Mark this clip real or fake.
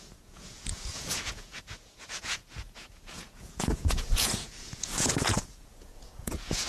fake